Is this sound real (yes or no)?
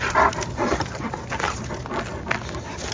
yes